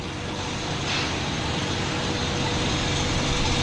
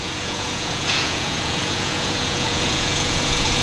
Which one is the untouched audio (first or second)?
first